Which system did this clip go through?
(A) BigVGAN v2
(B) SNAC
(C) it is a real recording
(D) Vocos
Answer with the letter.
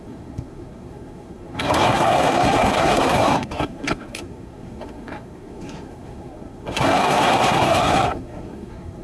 B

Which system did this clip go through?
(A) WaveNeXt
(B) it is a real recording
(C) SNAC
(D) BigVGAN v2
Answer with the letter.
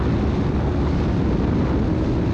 B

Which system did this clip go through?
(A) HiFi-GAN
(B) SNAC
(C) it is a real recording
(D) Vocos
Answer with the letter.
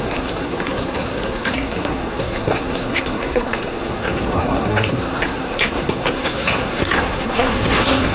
B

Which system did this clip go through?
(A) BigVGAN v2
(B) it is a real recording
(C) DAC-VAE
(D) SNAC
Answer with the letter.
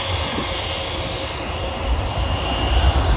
B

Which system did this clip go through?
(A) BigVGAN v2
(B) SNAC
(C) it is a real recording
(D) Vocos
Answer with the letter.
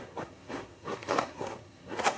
B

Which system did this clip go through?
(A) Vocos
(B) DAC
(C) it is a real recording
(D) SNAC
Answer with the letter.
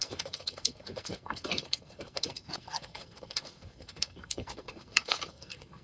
D